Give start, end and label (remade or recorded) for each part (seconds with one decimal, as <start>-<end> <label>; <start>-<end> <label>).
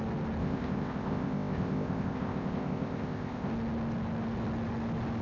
0.0-0.4 recorded; 0.4-3.5 remade; 3.5-5.2 recorded